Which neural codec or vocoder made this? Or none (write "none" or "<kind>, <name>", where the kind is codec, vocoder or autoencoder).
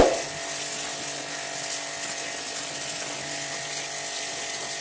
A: none